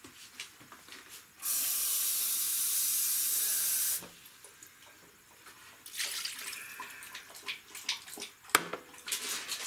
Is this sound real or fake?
real